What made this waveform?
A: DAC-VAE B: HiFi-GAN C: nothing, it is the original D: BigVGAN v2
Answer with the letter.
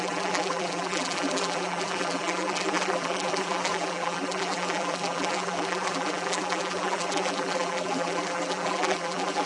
D